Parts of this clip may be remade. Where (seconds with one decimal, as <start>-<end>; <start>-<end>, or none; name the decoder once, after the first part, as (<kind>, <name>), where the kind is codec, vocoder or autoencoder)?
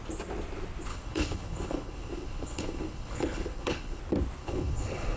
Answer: 0.9-4.0 (codec, HILCodec); 4.4-5.2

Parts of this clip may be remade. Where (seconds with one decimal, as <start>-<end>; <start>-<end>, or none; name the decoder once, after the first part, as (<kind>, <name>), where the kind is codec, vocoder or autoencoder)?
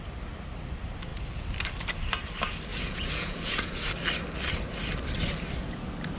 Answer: 2.7-3.8 (vocoder, Vocos)